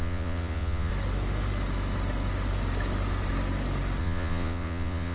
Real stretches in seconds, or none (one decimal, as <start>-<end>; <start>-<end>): 0.9-4.0